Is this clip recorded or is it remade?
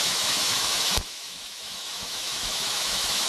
remade